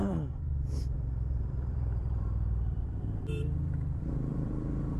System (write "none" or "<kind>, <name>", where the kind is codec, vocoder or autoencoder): vocoder, BigVGAN v2